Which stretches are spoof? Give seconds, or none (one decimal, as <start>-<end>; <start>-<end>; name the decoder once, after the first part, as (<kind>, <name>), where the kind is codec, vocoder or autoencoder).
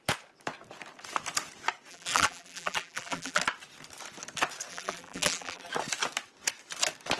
1.9-3.4 (vocoder, BigVGAN v2); 4.7-5.7